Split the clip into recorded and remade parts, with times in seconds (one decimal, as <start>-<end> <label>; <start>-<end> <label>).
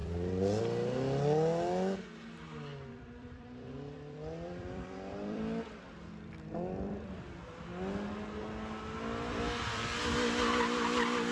0.0-0.6 remade; 0.6-2.7 recorded; 2.7-7.2 remade; 7.2-11.3 recorded